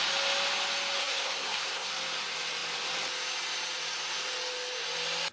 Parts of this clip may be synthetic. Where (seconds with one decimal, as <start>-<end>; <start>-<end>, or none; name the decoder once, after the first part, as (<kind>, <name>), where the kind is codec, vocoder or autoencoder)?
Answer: 1.0-1.9 (codec, SNAC)